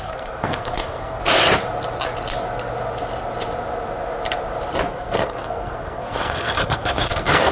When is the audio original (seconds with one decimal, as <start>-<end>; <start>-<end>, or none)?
1.2-4.9